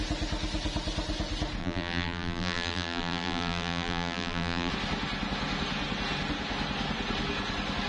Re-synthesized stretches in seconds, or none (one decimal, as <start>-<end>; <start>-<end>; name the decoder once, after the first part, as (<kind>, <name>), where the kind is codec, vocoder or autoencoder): 1.6-4.7 (vocoder, BigVGAN v2)